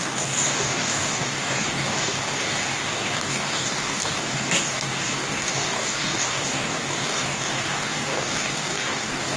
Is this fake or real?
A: fake